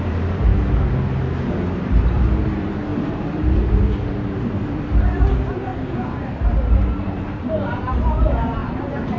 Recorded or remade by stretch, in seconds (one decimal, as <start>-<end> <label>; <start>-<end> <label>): 0.0-0.5 remade; 0.5-1.5 recorded; 1.5-5.7 remade; 5.7-6.2 recorded; 6.2-9.2 remade